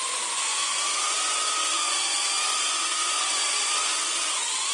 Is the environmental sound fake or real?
fake